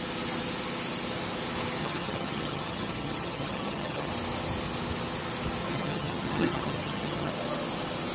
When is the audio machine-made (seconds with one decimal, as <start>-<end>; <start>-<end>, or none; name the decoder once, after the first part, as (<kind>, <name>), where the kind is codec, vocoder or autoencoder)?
1.8-4.1 (vocoder, HiFi-GAN); 5.6-7.3